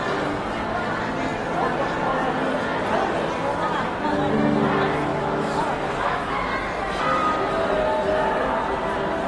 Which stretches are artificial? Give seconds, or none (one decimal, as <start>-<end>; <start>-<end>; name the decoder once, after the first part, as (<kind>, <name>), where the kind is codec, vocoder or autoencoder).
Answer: 5.1-6.5 (autoencoder, DAC-VAE)